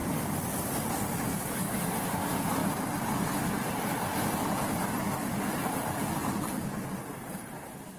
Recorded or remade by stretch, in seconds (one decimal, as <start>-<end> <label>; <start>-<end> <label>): 0.0-1.3 recorded; 1.3-1.8 remade; 1.8-8.0 recorded

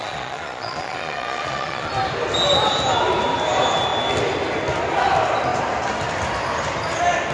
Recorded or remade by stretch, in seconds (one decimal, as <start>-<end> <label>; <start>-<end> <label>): 0.0-1.9 remade; 1.9-7.3 recorded